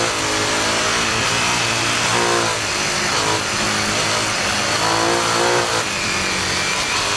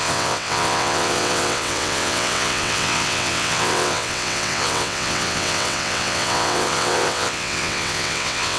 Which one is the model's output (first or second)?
second